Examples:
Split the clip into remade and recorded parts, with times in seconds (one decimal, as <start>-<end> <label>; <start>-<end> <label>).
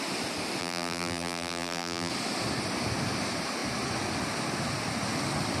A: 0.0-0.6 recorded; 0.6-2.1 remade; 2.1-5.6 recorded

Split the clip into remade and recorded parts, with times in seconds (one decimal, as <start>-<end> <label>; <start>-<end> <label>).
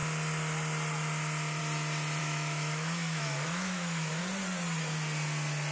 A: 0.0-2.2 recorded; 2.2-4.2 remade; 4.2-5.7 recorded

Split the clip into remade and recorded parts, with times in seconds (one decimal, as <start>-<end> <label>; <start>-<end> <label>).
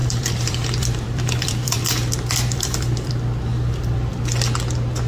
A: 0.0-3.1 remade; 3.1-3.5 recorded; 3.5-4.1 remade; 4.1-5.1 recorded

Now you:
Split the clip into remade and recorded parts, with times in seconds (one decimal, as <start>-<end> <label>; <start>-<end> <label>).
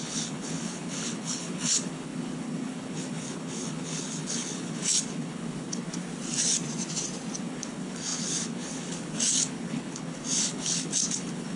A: 0.0-6.0 remade; 6.0-7.4 recorded; 7.4-11.6 remade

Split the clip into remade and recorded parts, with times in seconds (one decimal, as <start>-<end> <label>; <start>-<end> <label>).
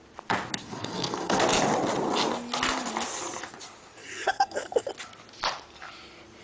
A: 0.0-0.6 recorded; 0.6-1.4 remade; 1.4-4.0 recorded; 4.0-4.9 remade; 4.9-6.4 recorded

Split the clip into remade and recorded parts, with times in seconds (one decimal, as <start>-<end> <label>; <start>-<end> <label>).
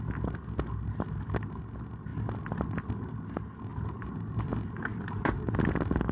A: 0.0-2.1 recorded; 2.1-2.8 remade; 2.8-3.7 recorded; 3.7-4.5 remade; 4.5-4.9 recorded; 4.9-5.5 remade; 5.5-6.1 recorded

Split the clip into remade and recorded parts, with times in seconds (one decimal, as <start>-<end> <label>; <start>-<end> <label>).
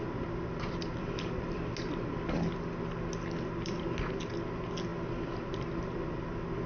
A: 0.0-6.7 recorded